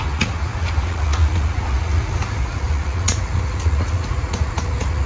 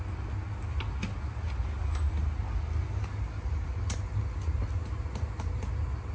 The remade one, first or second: first